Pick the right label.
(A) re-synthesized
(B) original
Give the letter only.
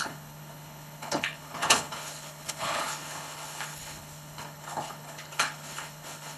A